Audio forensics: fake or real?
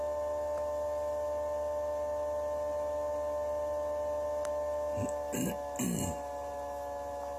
real